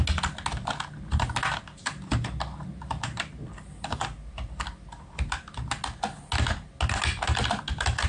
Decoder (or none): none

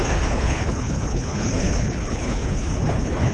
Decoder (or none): codec, HILCodec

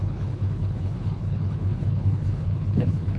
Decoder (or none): codec, HILCodec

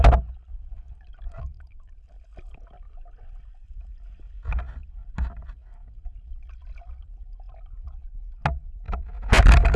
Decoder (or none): none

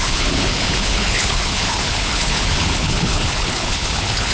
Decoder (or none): codec, HILCodec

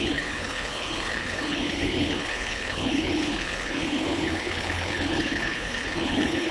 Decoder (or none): codec, HILCodec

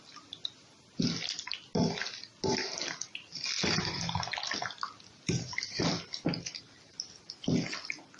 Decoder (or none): none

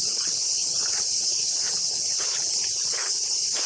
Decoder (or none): codec, HILCodec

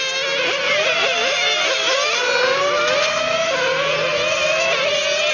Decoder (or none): none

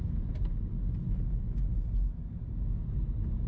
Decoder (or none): none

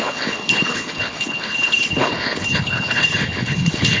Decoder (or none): codec, HILCodec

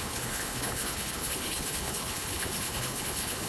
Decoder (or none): codec, HILCodec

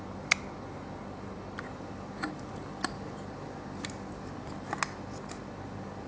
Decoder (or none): none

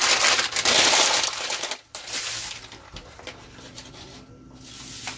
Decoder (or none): none